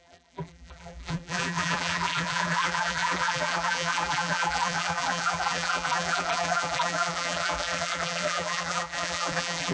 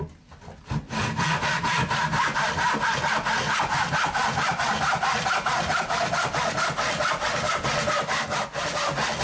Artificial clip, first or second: first